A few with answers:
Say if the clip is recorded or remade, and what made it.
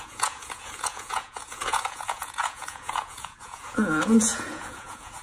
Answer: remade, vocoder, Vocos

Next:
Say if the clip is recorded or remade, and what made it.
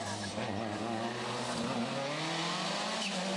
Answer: recorded